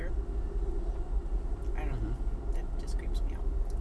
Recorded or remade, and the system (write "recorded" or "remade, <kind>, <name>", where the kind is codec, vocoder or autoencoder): recorded